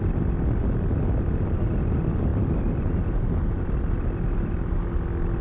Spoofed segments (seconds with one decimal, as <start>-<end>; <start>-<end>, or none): none